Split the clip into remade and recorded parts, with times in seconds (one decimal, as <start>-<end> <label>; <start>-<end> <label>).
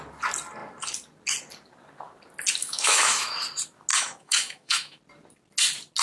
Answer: 0.0-2.6 recorded; 2.6-3.3 remade; 3.3-3.9 recorded; 3.9-5.0 remade; 5.0-6.0 recorded